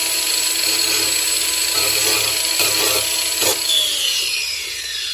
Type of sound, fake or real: fake